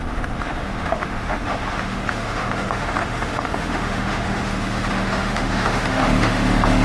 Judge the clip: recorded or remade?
remade